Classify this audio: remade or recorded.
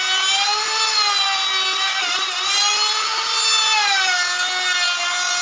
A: recorded